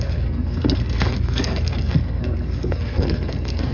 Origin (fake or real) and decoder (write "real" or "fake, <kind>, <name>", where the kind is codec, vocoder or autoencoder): fake, codec, SNAC